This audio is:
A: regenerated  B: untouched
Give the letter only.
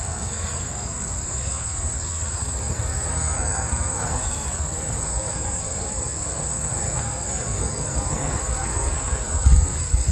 A